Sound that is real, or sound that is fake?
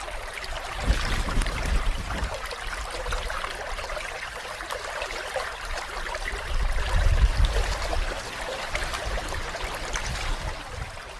real